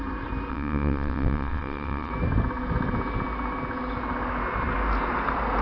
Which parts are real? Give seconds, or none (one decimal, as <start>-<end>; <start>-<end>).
0.0-0.5; 2.1-5.6